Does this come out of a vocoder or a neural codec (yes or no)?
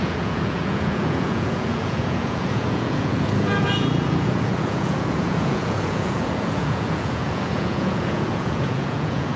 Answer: yes